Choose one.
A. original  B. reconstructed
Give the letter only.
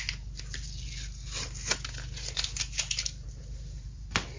A